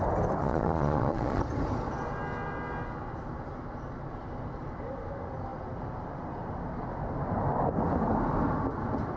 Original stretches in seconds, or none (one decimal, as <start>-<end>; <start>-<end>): 0.0-0.4; 1.4-9.2